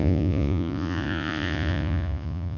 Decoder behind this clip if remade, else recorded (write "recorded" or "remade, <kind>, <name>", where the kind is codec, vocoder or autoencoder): remade, vocoder, Vocos